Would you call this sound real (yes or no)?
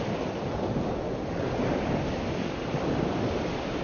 yes